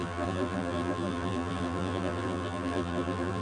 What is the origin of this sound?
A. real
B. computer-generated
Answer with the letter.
B